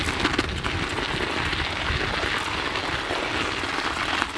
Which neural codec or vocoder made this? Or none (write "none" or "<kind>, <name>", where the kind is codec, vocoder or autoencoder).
none